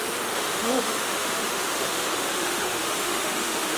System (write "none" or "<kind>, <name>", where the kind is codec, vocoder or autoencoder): autoencoder, DAC-VAE